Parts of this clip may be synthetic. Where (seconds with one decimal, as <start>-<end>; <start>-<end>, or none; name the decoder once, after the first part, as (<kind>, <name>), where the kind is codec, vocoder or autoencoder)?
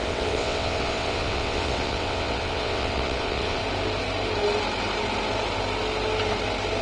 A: 0.0-3.6 (vocoder, WaveNeXt)